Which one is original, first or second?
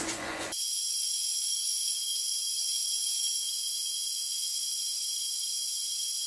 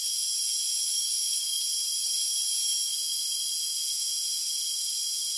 second